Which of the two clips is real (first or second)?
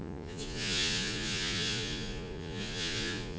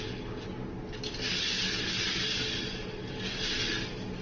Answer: second